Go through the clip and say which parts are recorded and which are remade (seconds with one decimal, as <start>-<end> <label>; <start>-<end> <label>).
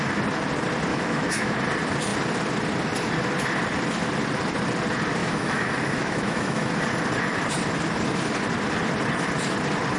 0.0-0.9 recorded; 0.9-1.6 remade; 1.6-5.2 recorded; 5.2-6.7 remade; 6.7-10.0 recorded